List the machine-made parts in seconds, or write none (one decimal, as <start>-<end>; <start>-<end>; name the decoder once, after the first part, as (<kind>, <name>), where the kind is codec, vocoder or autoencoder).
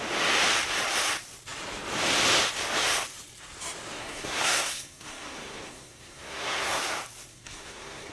4.0-6.8 (codec, SNAC); 7.3-8.1